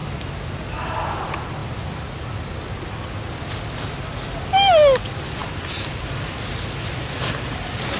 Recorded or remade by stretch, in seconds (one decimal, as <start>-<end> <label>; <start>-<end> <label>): 0.0-8.0 recorded